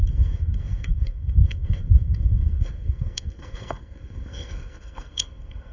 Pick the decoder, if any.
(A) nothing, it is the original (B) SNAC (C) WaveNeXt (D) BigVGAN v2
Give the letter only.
B